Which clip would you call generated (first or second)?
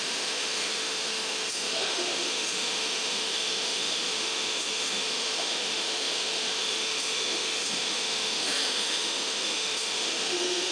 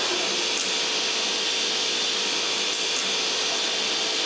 first